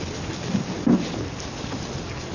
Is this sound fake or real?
real